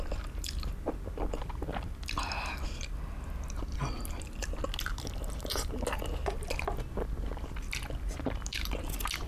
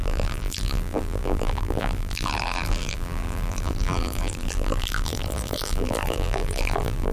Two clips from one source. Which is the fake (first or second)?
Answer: second